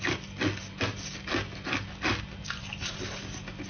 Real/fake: real